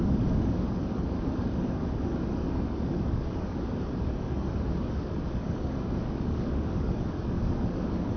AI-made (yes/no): yes